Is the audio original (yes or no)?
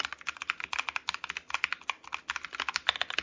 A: yes